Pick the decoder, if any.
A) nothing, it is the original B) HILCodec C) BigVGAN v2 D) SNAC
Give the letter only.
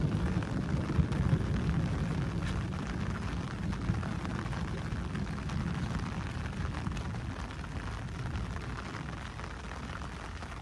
A